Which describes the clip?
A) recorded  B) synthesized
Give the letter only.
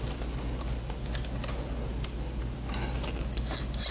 A